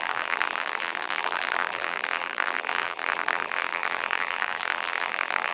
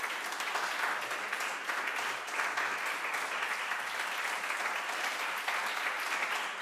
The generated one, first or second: first